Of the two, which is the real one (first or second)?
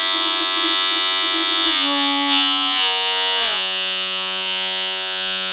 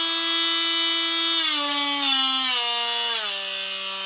second